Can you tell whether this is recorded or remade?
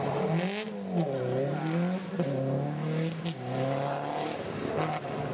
recorded